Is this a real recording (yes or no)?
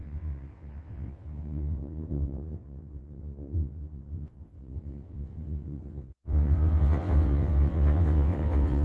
no